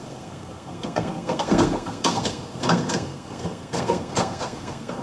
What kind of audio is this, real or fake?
fake